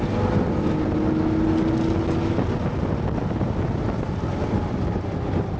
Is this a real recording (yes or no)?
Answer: yes